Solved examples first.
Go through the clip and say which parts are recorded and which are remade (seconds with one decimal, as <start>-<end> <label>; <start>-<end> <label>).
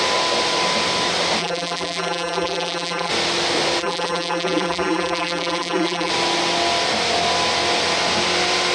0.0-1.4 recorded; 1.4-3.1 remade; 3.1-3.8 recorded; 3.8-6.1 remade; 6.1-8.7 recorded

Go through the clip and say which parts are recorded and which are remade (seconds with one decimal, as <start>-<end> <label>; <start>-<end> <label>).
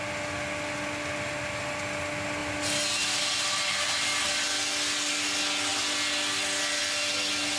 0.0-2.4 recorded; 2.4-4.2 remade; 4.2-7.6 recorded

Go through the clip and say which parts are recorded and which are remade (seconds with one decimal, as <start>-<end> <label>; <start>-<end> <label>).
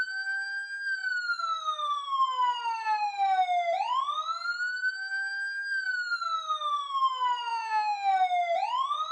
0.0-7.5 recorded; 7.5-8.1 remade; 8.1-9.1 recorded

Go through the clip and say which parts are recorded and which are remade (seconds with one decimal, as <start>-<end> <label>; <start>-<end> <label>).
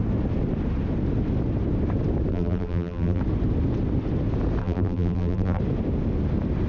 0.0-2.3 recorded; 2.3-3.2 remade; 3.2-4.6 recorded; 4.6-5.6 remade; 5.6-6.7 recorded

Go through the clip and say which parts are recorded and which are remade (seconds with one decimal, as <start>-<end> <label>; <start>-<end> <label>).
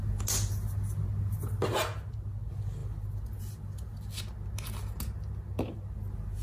0.0-6.4 recorded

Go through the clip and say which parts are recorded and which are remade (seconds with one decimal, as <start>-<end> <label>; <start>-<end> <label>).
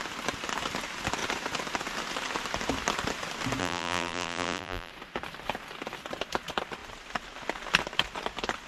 0.0-3.6 recorded; 3.6-4.9 remade; 4.9-8.7 recorded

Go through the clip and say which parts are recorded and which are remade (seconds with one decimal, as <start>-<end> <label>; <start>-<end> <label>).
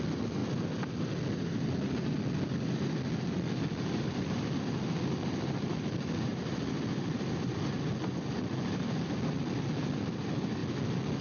0.0-0.4 remade; 0.4-2.5 recorded; 2.5-10.6 remade; 10.6-11.2 recorded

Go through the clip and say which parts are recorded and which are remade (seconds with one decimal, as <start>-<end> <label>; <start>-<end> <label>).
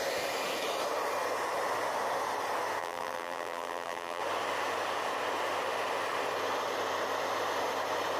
0.0-2.8 recorded; 2.8-4.2 remade; 4.2-8.2 recorded